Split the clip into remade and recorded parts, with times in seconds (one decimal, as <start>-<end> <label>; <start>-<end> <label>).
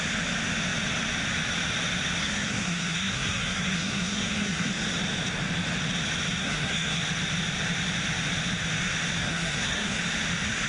0.0-2.2 recorded; 2.2-4.7 remade; 4.7-6.4 recorded; 6.4-7.0 remade; 7.0-9.2 recorded; 9.2-10.0 remade; 10.0-10.7 recorded